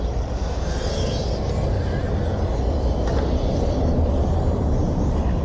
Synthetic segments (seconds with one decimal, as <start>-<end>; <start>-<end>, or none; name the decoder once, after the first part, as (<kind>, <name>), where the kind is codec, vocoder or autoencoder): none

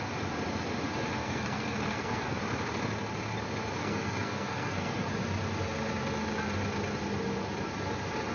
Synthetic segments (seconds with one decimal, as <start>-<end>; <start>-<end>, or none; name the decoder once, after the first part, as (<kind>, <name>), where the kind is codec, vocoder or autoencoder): 1.2-2.4 (codec, SNAC); 3.8-5.1

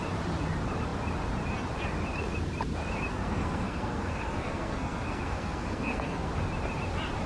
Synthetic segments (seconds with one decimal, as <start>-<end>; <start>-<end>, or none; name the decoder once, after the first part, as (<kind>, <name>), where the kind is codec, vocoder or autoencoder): 3.1-6.3 (codec, SNAC)

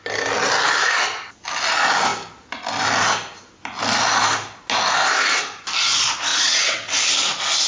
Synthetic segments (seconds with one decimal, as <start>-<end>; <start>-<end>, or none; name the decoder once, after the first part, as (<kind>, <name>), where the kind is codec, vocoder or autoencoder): 6.3-6.9 (vocoder, WaveNeXt)

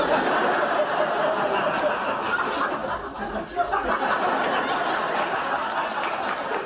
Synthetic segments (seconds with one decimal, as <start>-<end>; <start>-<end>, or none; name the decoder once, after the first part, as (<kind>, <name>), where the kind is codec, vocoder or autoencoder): none

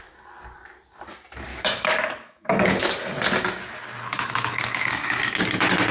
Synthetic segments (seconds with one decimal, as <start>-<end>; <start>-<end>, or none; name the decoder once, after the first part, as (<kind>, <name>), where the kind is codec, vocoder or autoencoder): 1.5-3.1 (autoencoder, DAC-VAE); 4.1-5.2